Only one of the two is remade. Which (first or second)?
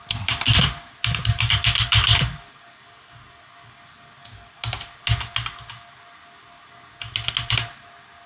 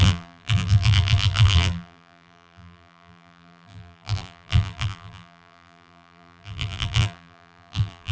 second